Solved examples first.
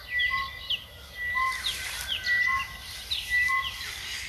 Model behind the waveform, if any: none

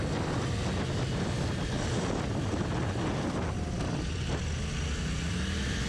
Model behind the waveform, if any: none